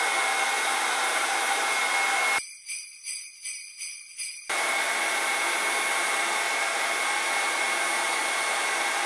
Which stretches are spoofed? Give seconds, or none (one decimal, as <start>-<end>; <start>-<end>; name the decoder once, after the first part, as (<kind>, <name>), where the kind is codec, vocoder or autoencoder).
0.7-1.7 (vocoder, BigVGAN v2); 3.9-4.7